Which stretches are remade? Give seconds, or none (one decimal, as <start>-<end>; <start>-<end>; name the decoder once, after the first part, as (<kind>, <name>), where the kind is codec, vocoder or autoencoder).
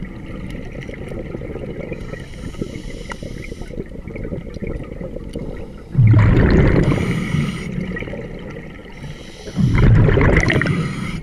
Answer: none